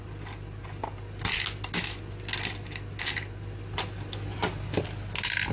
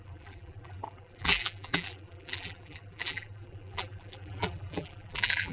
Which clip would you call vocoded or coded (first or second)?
second